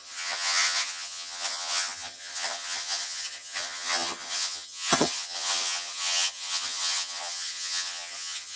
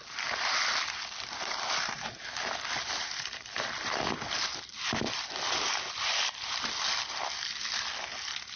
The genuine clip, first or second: second